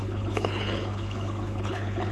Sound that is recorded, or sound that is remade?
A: remade